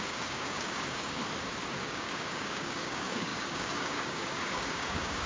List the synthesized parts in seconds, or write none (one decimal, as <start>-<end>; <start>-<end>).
0.0-1.2; 1.8-5.3